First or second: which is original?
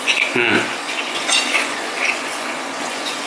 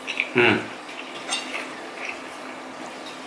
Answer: second